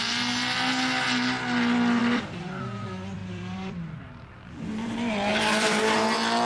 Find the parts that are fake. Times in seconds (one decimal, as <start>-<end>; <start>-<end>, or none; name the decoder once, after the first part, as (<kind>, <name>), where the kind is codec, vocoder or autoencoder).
2.0-2.6 (vocoder, BigVGAN v2); 3.2-4.0; 5.3-5.8